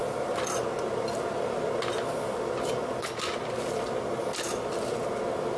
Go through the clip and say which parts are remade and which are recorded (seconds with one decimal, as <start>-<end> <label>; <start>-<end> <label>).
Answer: 0.0-5.6 recorded